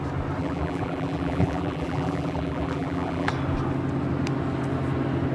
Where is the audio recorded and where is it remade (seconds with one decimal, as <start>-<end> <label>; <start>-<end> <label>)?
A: 0.0-0.4 recorded; 0.4-3.3 remade; 3.3-5.3 recorded